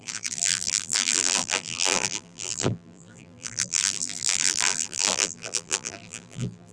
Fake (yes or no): yes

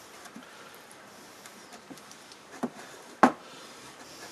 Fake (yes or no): yes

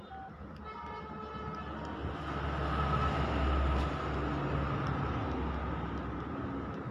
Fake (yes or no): no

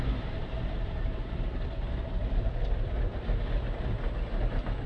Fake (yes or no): yes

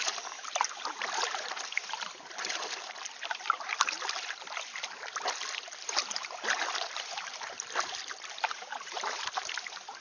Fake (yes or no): yes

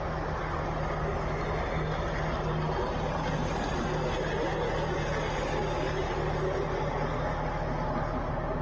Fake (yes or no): no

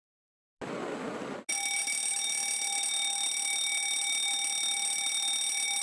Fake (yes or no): no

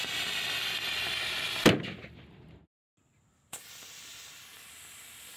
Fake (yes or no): no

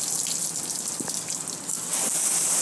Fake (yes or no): no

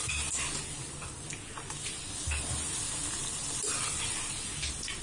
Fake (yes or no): no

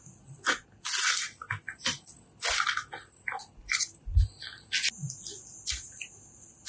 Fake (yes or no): no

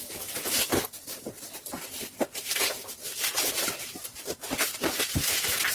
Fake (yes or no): yes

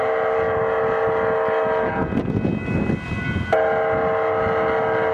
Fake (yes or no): no